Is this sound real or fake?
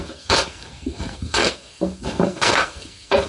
fake